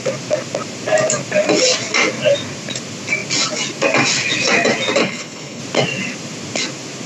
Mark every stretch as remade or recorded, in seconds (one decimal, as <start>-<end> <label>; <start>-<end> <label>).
0.0-5.0 recorded; 5.0-5.6 remade; 5.6-7.1 recorded